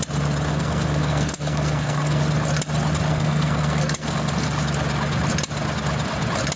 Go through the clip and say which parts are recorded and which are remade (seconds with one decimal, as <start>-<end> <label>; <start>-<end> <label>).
0.0-0.5 recorded; 0.5-2.2 remade; 2.2-3.1 recorded; 3.1-4.3 remade; 4.3-6.6 recorded